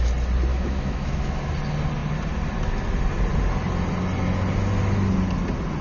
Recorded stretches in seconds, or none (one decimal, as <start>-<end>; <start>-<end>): 0.0-0.5; 1.5-5.8

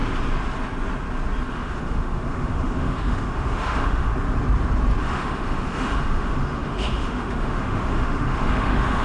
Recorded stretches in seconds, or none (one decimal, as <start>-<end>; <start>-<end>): 0.0-1.5; 4.1-5.0

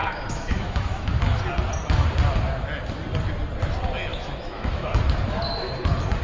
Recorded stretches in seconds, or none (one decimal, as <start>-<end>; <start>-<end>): 1.2-4.1; 5.0-6.2

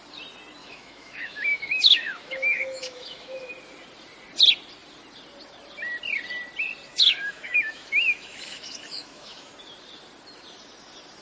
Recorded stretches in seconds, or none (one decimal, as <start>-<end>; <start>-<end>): 0.0-0.6; 3.5-6.9; 9.5-11.2

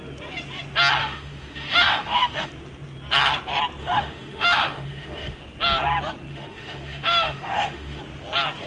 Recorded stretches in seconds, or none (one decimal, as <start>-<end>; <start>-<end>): 0.0-1.0; 2.5-3.8; 5.4-6.3; 8.0-8.7

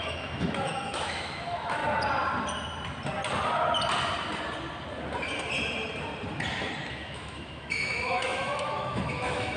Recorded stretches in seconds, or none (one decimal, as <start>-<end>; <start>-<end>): 1.8-6.9

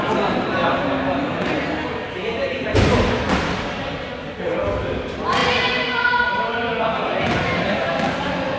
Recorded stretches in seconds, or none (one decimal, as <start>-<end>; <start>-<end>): 0.0-8.6